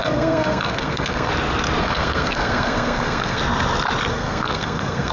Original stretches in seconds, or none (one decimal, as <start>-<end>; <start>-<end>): 1.3-1.8; 3.4-4.1